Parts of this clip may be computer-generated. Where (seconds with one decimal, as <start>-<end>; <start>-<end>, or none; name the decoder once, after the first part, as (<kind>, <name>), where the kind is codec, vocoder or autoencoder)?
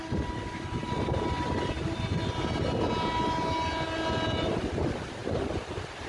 none